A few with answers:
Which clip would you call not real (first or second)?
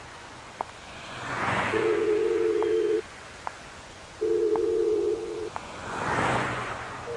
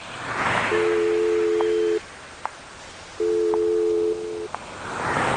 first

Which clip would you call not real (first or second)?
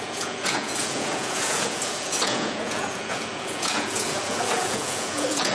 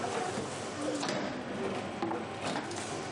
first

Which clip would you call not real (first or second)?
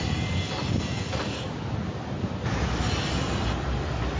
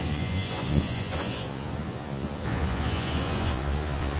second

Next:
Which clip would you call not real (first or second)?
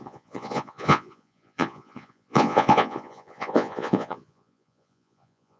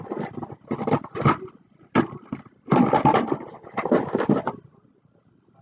first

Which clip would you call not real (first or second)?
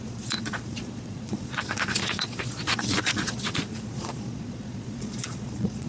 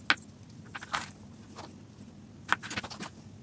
first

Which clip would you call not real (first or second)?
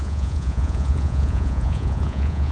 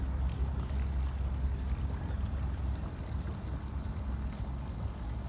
first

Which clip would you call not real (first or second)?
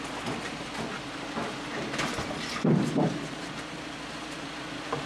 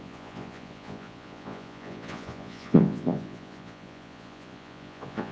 second